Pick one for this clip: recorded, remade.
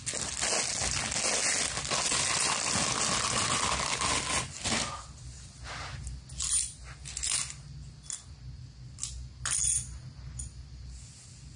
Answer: recorded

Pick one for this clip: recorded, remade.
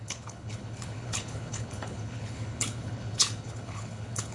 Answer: remade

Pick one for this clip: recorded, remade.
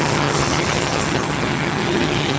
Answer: remade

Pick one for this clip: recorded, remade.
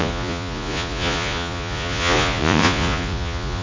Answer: remade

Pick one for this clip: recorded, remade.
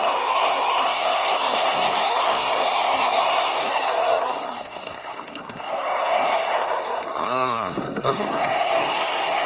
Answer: remade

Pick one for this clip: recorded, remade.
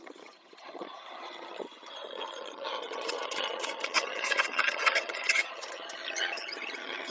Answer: remade